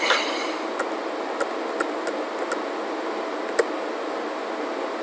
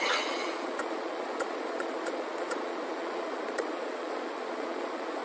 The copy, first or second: second